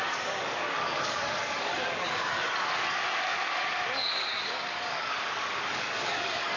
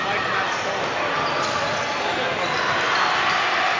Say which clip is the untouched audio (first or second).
second